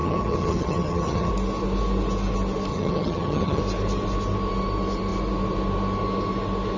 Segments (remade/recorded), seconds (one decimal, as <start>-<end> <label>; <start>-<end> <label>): 0.0-1.3 remade; 1.3-2.7 recorded; 2.7-3.6 remade; 3.6-6.8 recorded